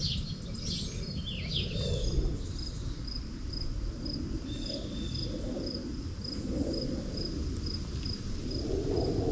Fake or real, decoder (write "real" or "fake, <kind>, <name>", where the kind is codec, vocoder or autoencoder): real